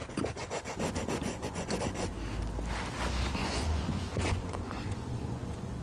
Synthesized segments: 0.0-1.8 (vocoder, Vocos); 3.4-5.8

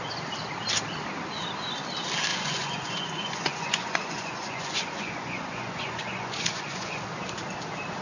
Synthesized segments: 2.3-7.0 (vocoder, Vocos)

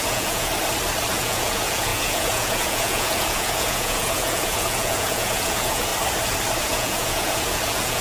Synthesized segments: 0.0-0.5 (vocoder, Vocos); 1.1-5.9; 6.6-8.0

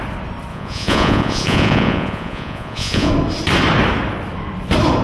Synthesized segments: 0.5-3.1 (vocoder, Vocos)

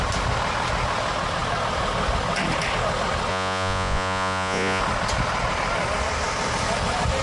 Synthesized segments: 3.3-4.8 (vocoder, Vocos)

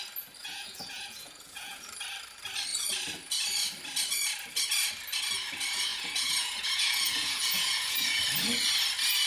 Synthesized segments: 0.4-1.9 (vocoder, Vocos); 5.9-8.2

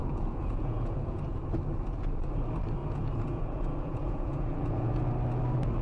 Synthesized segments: 0.0-1.4 (vocoder, Vocos); 2.8-5.0

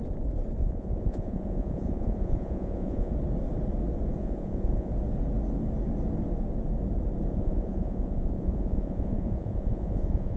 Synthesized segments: 0.6-3.1 (vocoder, Vocos); 4.2-4.9; 7.3-10.4